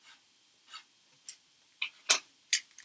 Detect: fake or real real